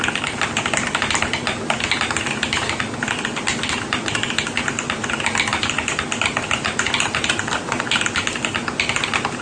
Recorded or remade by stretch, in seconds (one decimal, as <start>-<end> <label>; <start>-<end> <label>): 0.0-5.5 recorded; 5.5-7.6 remade; 7.6-9.4 recorded